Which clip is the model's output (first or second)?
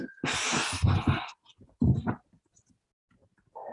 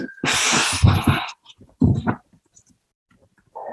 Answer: second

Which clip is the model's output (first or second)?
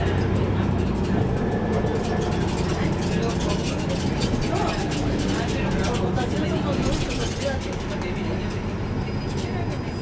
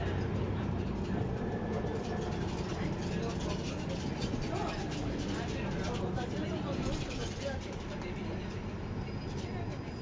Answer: second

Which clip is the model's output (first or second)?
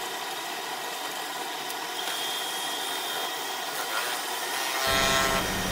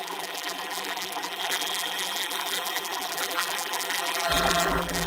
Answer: second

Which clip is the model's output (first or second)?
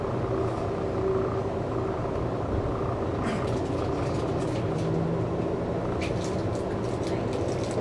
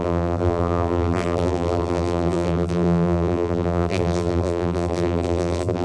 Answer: second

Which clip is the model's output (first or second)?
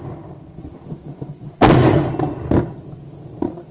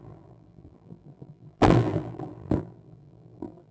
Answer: second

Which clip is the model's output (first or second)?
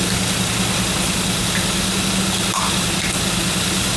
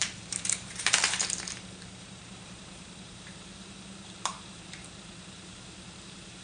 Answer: second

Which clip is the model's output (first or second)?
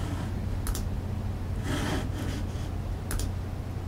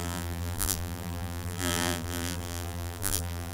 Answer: second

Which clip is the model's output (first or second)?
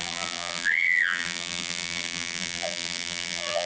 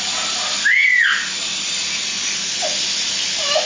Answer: first